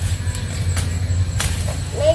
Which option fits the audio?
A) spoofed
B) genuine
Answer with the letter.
B